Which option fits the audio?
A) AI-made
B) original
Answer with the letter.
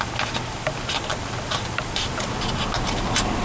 B